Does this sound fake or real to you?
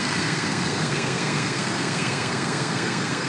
fake